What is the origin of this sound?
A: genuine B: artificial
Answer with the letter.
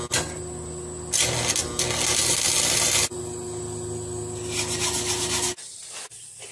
A